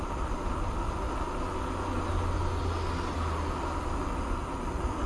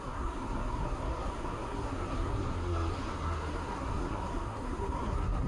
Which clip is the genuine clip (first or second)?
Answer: first